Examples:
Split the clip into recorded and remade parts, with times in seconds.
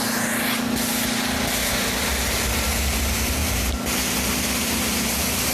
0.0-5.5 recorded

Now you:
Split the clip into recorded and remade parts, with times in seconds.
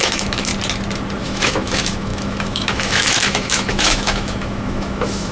0.0-0.5 remade; 0.5-1.2 recorded; 1.2-5.3 remade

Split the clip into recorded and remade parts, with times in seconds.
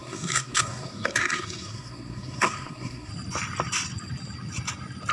0.0-3.1 remade; 3.1-5.1 recorded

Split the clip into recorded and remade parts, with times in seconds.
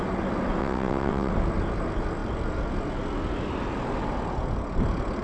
0.0-0.6 recorded; 0.6-1.3 remade; 1.3-5.2 recorded